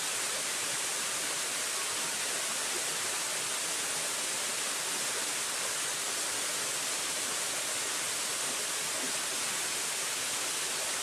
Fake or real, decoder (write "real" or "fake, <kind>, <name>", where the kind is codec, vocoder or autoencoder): real